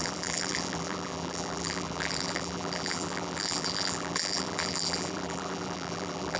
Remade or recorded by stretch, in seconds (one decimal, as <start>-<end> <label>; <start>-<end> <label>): 0.0-6.4 remade